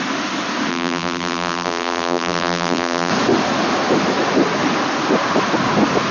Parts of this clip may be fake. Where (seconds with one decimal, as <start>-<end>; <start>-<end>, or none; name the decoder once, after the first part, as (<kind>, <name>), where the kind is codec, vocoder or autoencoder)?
0.7-3.1 (vocoder, BigVGAN v2)